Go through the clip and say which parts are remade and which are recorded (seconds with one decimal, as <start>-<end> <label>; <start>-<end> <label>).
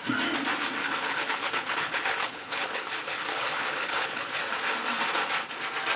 0.0-0.8 recorded; 0.8-4.4 remade; 4.4-6.0 recorded